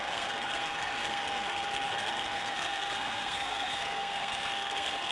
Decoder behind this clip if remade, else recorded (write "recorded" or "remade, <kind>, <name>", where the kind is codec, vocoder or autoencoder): remade, codec, SNAC